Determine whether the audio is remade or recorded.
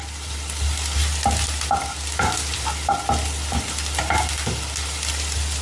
recorded